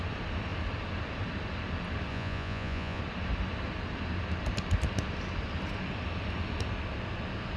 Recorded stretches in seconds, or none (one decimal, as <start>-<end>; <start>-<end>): 0.0-2.1; 3.0-7.6